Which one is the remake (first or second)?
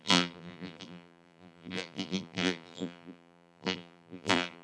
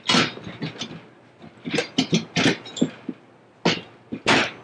first